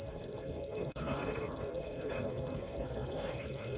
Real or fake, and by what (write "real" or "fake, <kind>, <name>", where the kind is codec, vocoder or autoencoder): fake, codec, SNAC